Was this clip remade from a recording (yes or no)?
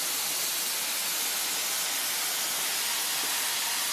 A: no